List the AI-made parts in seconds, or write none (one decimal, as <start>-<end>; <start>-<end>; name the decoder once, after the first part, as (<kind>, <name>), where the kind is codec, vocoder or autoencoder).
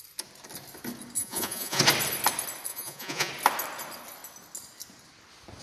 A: 1.2-1.8 (vocoder, Vocos); 2.7-3.3